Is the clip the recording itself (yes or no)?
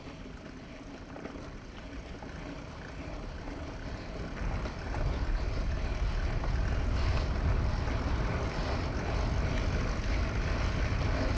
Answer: yes